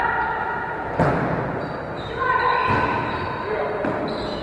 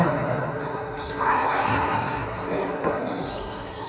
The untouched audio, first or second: first